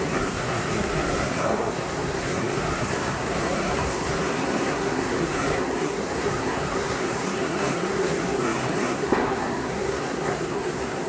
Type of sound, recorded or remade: remade